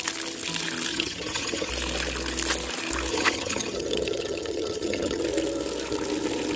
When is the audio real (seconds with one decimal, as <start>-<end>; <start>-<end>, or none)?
0.0-0.9; 1.7-3.1; 5.2-6.6